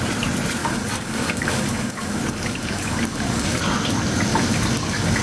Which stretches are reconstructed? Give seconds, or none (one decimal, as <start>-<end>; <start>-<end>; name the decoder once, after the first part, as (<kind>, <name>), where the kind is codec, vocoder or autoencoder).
0.6-3.6 (codec, DAC); 4.3-5.2